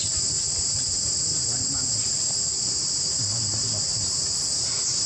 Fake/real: real